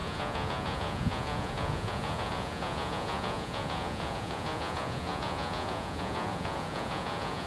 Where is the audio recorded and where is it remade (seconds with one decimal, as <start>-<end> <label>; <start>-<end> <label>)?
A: 0.0-7.5 remade